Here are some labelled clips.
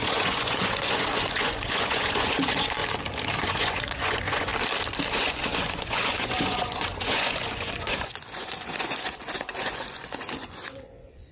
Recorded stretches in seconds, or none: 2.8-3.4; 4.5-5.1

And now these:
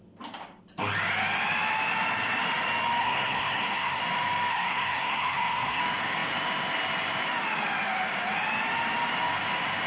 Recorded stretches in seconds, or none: 0.0-3.0; 4.0-4.5; 5.8-9.9

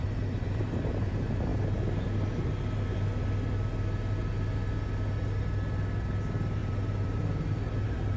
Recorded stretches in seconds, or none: 1.1-6.6

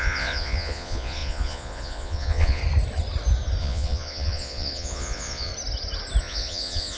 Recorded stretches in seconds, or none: 2.6-3.6; 5.5-6.2

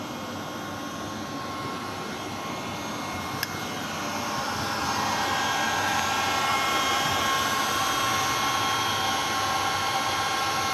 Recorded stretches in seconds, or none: 0.0-6.5; 7.1-10.7

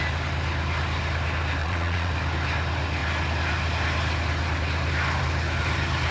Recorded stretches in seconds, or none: 0.0-1.6; 2.1-6.1

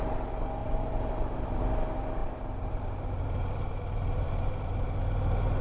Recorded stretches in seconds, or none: 0.0-0.6; 1.6-2.2; 5.0-5.6

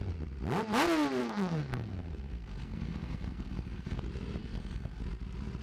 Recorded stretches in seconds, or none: 0.0-1.2; 4.0-4.4; 5.0-5.6